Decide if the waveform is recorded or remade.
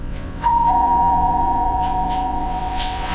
remade